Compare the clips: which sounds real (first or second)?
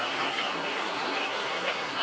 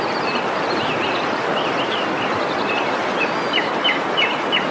second